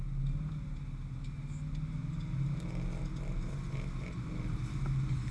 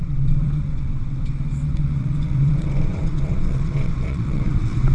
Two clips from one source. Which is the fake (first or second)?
second